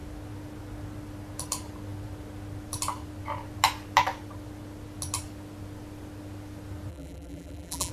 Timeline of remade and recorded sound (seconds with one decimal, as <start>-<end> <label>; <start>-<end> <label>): 0.0-6.9 recorded; 6.9-7.9 remade